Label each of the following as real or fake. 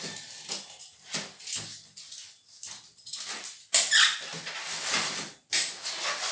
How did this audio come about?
real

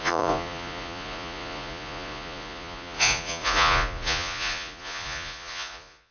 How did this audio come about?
fake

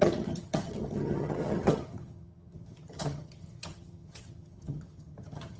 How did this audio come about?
fake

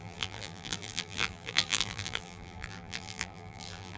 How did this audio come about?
fake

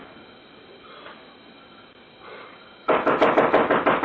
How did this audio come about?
real